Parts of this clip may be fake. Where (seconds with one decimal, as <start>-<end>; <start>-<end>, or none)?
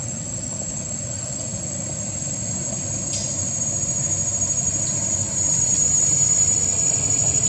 none